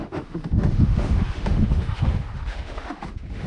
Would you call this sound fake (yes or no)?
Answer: yes